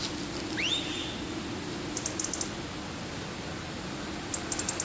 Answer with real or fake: real